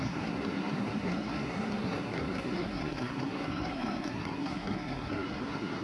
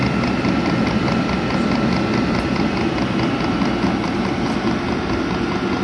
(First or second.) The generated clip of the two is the first